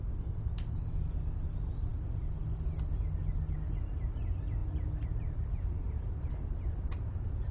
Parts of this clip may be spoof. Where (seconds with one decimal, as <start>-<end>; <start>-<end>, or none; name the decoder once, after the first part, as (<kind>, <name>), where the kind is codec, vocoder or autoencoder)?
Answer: none